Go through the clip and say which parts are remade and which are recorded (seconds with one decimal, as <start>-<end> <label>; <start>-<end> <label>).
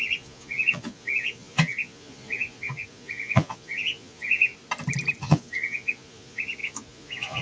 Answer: 0.0-4.5 remade; 4.5-5.2 recorded; 5.2-7.4 remade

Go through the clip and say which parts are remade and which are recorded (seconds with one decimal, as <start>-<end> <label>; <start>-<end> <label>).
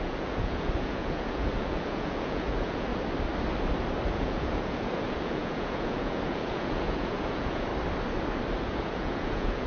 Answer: 0.0-2.9 remade; 2.9-4.1 recorded; 4.1-7.7 remade; 7.7-8.6 recorded; 8.6-9.7 remade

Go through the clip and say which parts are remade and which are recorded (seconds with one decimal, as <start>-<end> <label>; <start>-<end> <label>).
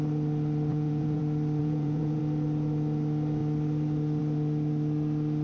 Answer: 0.0-0.7 recorded; 0.7-1.2 remade; 1.2-1.6 recorded; 1.6-2.2 remade; 2.2-5.4 recorded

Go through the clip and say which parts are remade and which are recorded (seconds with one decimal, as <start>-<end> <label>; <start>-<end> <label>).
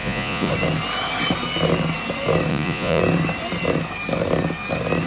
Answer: 0.0-0.5 remade; 0.5-2.5 recorded; 2.5-3.0 remade; 3.0-5.1 recorded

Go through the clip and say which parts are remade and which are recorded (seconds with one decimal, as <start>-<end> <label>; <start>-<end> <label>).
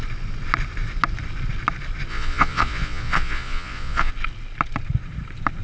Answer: 0.0-2.1 recorded; 2.1-4.1 remade; 4.1-5.6 recorded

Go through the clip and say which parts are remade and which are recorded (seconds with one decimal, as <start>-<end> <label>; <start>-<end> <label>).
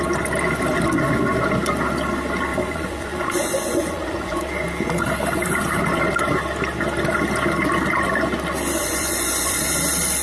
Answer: 0.0-2.5 recorded; 2.5-4.4 remade; 4.4-8.8 recorded; 8.8-9.6 remade; 9.6-10.2 recorded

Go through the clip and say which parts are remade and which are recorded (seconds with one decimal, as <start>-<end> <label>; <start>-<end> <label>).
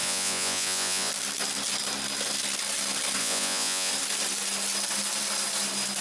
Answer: 0.0-1.1 remade; 1.1-3.2 recorded; 3.2-3.9 remade; 3.9-6.0 recorded